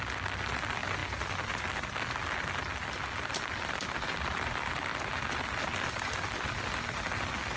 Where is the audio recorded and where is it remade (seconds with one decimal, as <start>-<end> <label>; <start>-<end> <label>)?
0.0-7.6 recorded